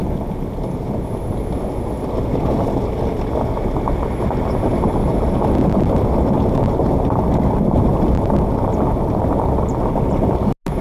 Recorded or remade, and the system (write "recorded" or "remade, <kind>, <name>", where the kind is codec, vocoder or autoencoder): recorded